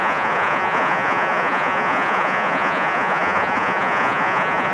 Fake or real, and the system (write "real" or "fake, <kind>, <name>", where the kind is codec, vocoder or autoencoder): fake, vocoder, Vocos